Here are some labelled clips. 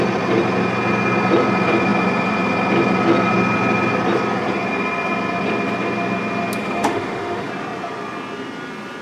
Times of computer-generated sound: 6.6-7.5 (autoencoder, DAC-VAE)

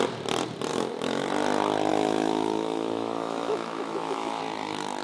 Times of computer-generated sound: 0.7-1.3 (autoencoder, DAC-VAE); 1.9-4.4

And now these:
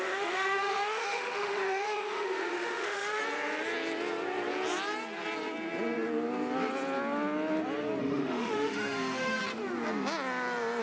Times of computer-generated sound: 0.0-3.2 (autoencoder, DAC-VAE); 8.0-9.4

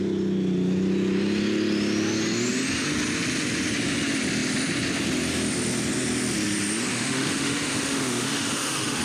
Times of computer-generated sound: 6.9-9.0 (autoencoder, DAC-VAE)

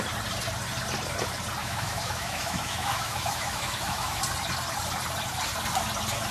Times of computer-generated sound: 1.6-4.2 (autoencoder, DAC-VAE)

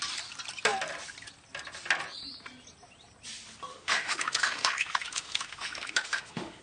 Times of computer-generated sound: 3.7-6.6 (autoencoder, DAC-VAE)

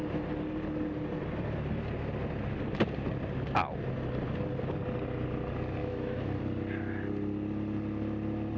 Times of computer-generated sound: 5.8-6.4 (autoencoder, DAC-VAE)